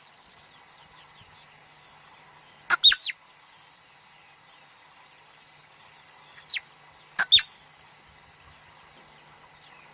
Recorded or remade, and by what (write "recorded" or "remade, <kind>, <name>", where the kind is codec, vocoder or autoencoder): recorded